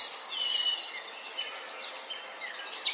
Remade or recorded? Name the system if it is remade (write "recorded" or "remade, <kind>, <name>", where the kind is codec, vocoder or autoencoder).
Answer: recorded